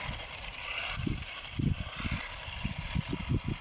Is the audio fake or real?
real